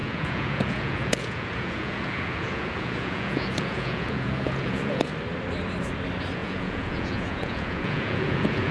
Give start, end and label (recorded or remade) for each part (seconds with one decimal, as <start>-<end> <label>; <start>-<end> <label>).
0.0-5.1 remade; 5.1-6.4 recorded; 6.4-8.7 remade